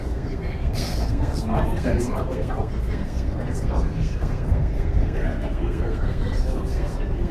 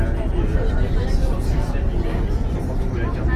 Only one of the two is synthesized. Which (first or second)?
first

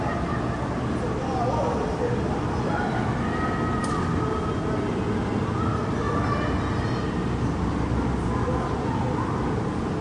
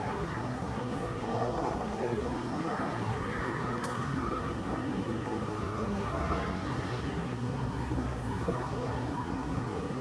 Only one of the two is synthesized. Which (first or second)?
second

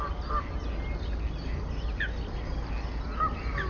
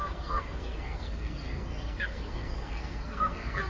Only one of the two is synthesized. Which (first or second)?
second